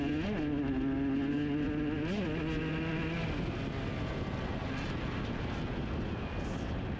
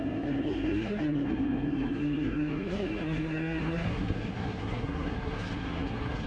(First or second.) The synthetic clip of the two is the second